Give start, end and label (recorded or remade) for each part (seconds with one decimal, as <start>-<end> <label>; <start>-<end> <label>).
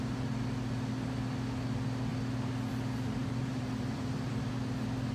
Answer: 0.0-3.2 recorded; 3.2-4.5 remade; 4.5-5.1 recorded